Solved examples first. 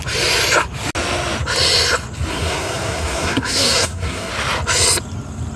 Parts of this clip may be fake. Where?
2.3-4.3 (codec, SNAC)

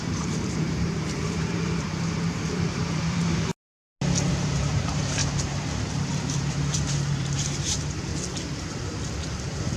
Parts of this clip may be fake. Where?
0.0-3.5 (vocoder, BigVGAN v2); 4.3-5.2; 6.1-8.1; 9.3-9.8